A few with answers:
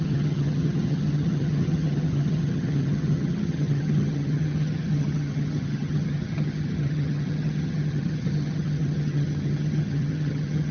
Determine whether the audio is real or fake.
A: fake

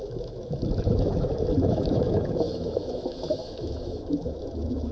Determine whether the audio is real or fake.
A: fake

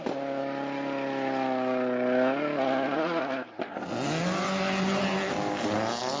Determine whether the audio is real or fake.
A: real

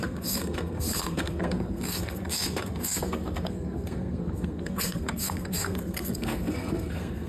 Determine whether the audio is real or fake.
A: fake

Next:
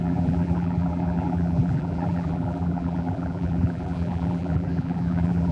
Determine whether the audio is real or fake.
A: fake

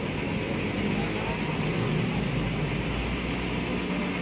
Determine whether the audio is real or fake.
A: real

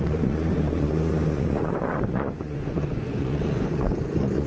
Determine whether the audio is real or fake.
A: fake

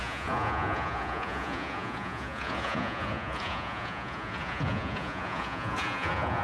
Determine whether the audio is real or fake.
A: fake